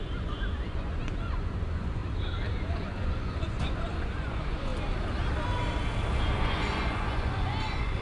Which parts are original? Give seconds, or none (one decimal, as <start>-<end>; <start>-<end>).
2.0-2.5; 4.7-6.2